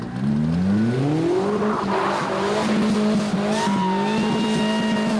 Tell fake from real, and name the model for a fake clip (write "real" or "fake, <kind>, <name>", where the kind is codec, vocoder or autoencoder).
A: real